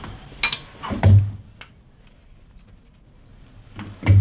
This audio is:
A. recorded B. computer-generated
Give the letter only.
A